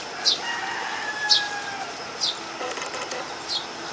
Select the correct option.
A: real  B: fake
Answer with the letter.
A